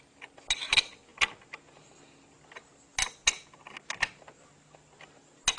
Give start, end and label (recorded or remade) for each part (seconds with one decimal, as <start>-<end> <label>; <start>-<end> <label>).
0.0-5.6 recorded